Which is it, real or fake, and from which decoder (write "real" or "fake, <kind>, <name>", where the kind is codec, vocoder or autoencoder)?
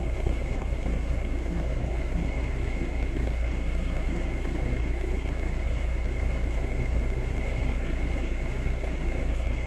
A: fake, codec, SNAC